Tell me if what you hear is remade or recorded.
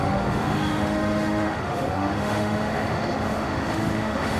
remade